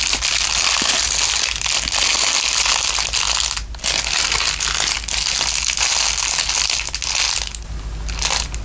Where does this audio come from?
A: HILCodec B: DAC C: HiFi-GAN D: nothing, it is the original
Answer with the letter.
D